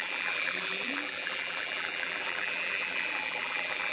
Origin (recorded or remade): remade